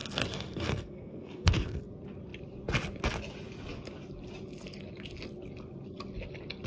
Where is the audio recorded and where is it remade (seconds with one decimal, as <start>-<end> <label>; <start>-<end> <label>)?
0.0-1.8 remade; 1.8-6.7 recorded

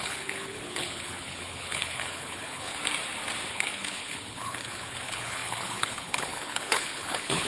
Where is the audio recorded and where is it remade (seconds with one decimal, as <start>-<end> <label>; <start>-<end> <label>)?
0.0-2.8 remade; 2.8-3.5 recorded; 3.5-7.5 remade

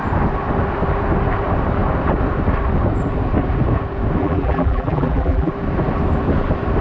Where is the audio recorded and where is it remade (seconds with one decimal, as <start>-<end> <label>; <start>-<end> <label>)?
0.0-4.2 recorded; 4.2-5.5 remade; 5.5-6.8 recorded

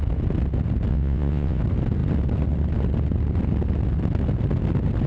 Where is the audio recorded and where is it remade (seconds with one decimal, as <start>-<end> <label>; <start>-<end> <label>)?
0.0-0.9 recorded; 0.9-1.6 remade; 1.6-5.1 recorded

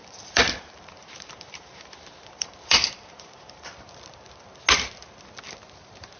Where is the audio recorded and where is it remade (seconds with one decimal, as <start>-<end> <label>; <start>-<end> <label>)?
0.0-3.7 remade; 3.7-6.2 recorded

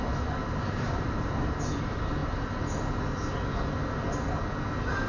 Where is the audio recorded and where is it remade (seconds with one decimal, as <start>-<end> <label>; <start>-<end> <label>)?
0.0-0.4 recorded; 0.4-1.3 remade; 1.3-5.1 recorded